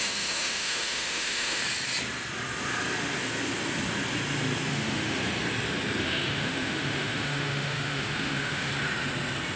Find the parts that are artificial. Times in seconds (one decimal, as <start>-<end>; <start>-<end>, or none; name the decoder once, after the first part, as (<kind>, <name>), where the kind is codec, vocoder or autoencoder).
0.0-1.6 (autoencoder, DAC-VAE); 4.7-5.2; 6.0-8.7